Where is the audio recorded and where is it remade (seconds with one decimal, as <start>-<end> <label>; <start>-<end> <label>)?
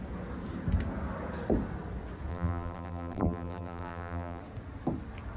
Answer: 0.0-2.3 recorded; 2.3-4.4 remade; 4.4-5.4 recorded